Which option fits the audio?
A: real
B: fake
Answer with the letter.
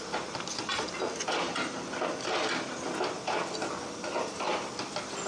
A